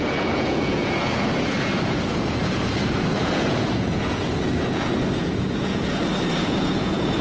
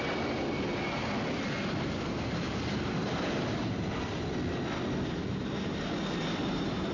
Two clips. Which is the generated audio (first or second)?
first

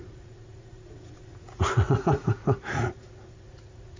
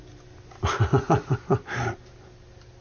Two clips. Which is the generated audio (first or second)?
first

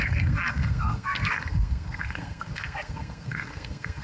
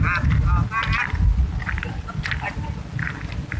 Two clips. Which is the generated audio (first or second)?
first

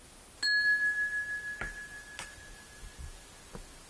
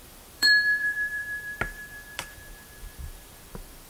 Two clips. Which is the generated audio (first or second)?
second